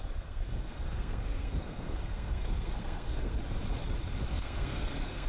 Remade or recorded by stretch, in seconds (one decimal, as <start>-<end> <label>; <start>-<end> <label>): 0.0-3.4 remade; 3.4-4.3 recorded; 4.3-5.3 remade